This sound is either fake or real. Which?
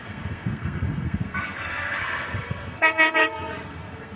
fake